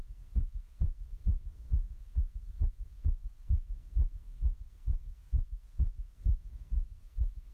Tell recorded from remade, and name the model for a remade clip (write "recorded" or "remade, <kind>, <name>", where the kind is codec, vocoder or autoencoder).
remade, codec, SNAC